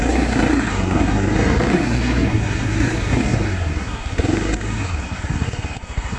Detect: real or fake fake